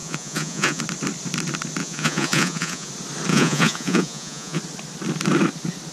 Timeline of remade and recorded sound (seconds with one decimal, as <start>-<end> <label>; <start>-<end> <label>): 0.0-0.8 remade; 0.8-1.8 recorded; 1.8-2.9 remade; 2.9-3.3 recorded; 3.3-4.6 remade; 4.6-5.9 recorded